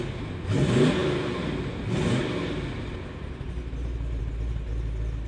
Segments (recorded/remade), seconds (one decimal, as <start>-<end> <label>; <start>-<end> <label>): 0.0-5.3 recorded